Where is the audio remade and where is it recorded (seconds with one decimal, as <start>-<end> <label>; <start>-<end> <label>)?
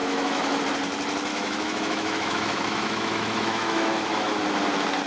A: 0.0-0.6 remade; 0.6-1.3 recorded; 1.3-4.4 remade; 4.4-5.1 recorded